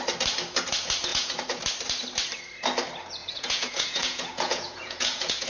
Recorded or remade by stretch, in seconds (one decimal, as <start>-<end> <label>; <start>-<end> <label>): 0.0-1.1 recorded; 1.1-1.6 remade; 1.6-3.2 recorded; 3.2-5.5 remade